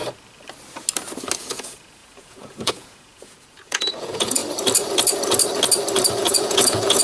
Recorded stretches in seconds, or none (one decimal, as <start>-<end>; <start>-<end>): 0.0-1.4; 4.4-6.1